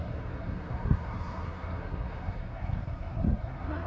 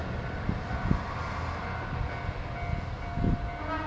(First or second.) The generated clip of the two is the first